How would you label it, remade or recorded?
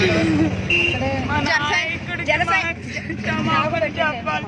recorded